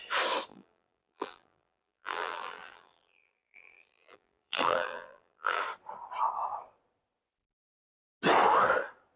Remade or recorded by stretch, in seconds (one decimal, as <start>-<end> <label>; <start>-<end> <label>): 0.0-0.5 recorded; 0.5-5.6 remade; 5.6-9.2 recorded